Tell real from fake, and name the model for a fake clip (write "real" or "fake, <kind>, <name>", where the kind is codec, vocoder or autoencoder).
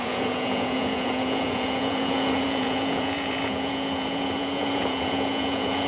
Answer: fake, vocoder, Vocos